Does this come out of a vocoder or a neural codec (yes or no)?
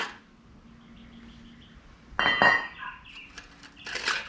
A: no